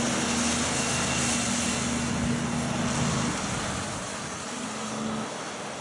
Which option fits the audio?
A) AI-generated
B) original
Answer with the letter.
B